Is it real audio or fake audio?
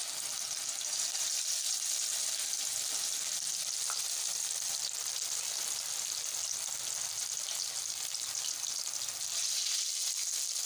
real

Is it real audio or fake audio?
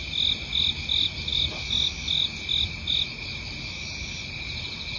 real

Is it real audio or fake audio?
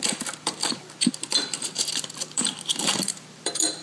fake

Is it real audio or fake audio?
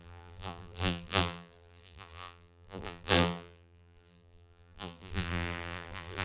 fake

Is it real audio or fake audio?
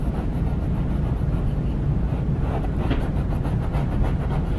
fake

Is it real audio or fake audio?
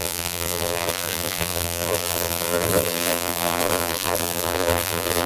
fake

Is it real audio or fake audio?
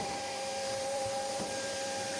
fake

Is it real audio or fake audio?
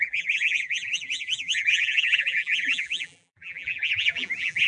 fake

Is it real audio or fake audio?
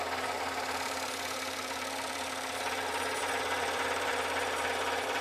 fake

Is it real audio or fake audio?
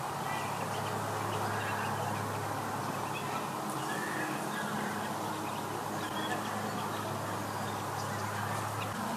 real